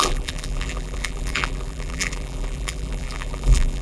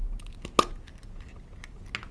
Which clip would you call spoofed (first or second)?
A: first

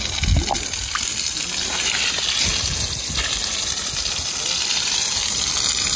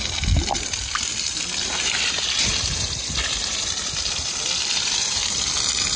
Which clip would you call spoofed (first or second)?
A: second